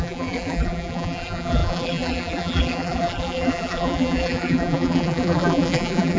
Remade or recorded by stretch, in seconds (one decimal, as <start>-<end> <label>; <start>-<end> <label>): 0.0-6.2 remade